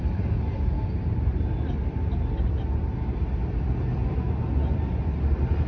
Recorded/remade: recorded